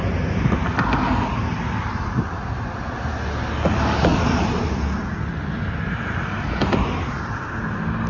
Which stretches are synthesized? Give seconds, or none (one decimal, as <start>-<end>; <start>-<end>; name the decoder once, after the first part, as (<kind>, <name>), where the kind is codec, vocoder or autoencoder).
none